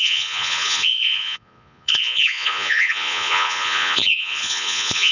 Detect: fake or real fake